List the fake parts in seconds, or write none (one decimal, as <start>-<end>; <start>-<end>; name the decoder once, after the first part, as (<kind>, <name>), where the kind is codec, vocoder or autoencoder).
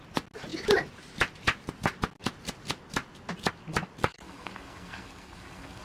4.0-5.8 (codec, SNAC)